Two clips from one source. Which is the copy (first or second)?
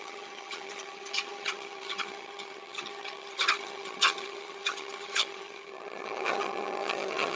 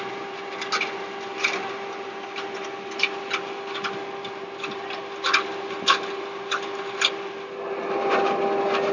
first